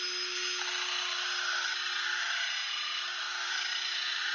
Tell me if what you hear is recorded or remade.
recorded